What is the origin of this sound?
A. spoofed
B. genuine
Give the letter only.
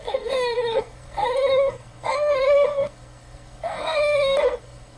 A